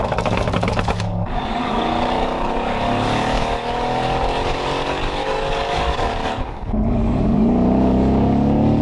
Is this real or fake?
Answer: fake